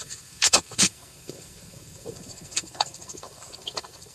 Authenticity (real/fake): fake